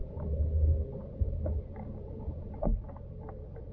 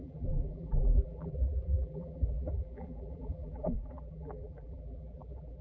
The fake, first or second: second